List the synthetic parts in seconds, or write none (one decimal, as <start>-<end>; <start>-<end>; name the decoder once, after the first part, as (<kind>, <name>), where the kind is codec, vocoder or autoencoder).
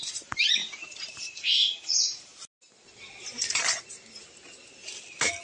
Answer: 0.0-2.3 (vocoder, BigVGAN v2)